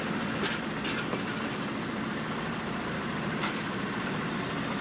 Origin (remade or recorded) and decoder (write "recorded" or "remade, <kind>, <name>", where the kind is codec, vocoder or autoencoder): recorded